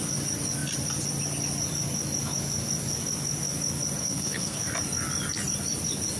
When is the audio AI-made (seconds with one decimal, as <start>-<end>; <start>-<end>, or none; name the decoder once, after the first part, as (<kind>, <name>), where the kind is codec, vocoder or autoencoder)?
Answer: 4.0-4.7 (codec, SNAC)